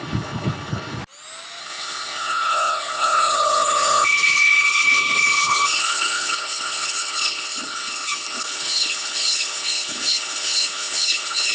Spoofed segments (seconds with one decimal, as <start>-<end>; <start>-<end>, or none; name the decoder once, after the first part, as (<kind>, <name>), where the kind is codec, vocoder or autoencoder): 0.0-1.0 (codec, HILCodec); 1.6-11.5